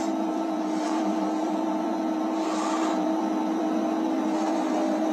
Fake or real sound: fake